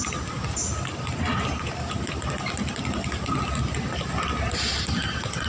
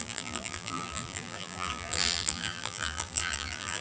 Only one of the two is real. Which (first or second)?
first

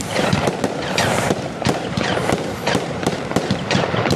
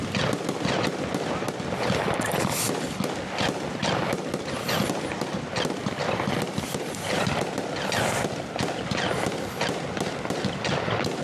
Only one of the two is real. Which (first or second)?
second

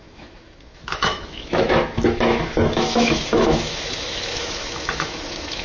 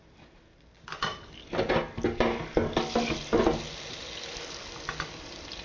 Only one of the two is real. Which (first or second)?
second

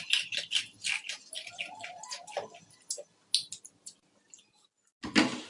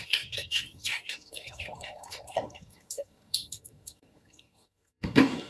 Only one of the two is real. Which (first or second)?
first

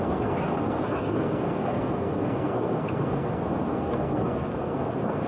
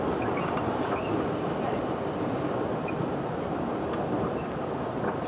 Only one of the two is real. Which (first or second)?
second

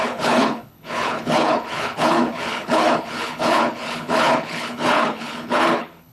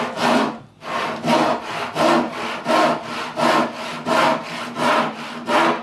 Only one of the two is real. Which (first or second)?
second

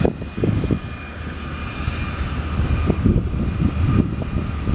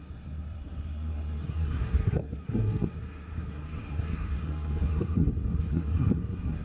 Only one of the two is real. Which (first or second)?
first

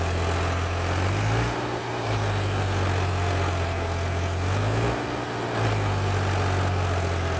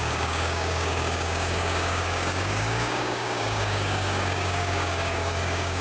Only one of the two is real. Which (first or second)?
first